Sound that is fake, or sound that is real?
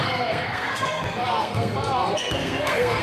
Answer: fake